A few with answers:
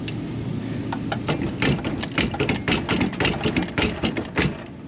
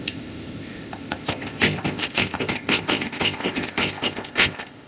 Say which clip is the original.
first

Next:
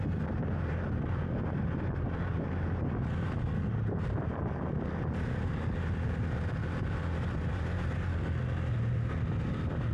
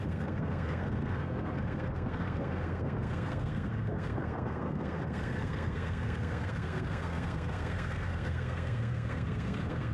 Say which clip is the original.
first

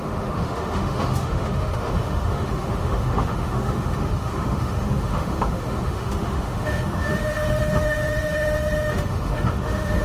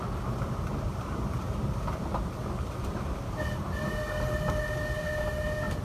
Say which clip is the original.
second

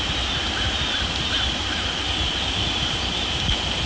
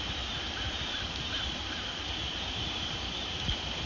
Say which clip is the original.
first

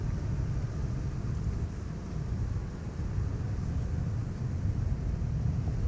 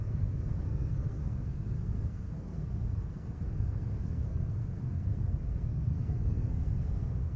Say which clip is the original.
first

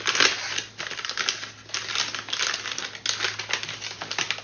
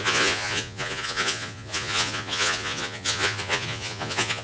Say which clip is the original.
first